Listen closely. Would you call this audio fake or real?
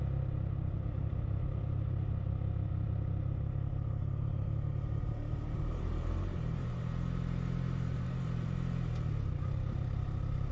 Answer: fake